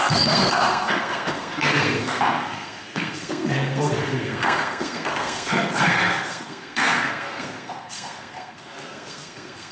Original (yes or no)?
no